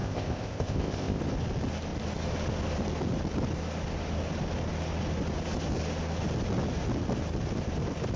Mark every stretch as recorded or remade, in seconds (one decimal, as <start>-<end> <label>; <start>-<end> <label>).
0.0-1.2 remade; 1.2-8.2 recorded